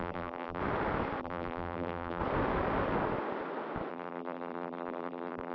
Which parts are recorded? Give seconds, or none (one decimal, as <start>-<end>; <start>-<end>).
0.6-1.2; 2.2-3.9

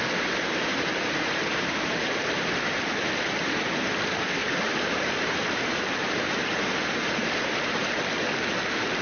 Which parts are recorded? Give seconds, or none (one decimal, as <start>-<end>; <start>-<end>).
0.0-0.7; 2.8-4.4; 8.0-9.0

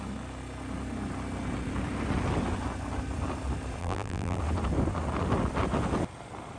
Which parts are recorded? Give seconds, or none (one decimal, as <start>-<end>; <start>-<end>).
0.0-3.8; 4.4-6.6